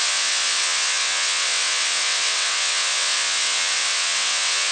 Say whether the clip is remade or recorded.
remade